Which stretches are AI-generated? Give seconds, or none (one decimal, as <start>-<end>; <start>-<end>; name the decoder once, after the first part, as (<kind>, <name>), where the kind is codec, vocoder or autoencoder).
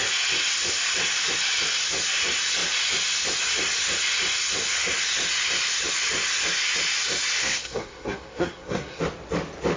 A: 7.4-9.0 (codec, SNAC)